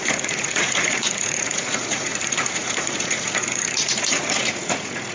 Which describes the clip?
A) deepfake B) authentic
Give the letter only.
A